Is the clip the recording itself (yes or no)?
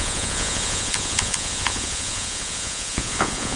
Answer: no